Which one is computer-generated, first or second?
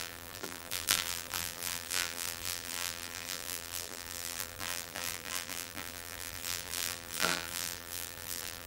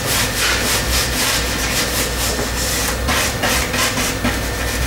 first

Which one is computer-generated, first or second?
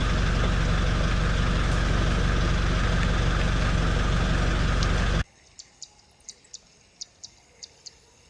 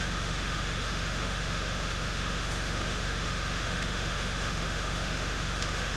second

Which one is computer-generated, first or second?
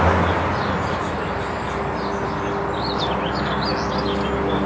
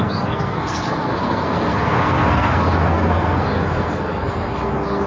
second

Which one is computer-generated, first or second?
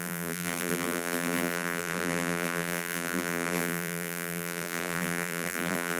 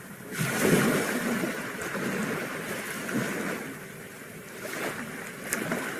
first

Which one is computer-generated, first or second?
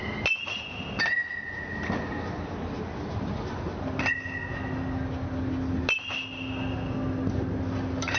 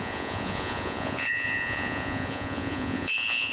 second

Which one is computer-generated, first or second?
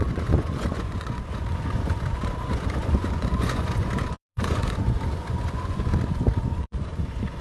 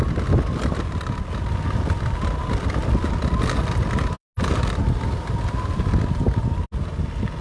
first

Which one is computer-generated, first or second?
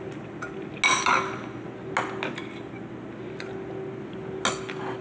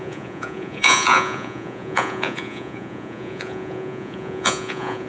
second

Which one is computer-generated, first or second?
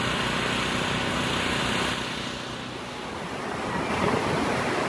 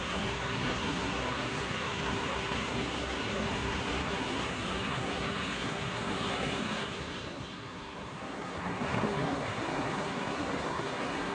second